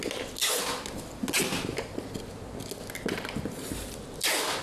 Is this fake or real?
real